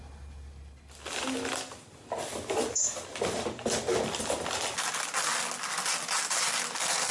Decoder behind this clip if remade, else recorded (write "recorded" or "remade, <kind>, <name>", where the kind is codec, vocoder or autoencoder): recorded